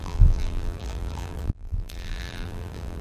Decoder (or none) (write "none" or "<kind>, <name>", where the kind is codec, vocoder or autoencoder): vocoder, BigVGAN v2